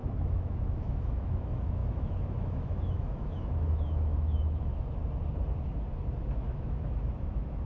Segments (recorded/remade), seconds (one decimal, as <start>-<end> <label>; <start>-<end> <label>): 0.0-4.7 remade; 4.7-6.3 recorded; 6.3-7.7 remade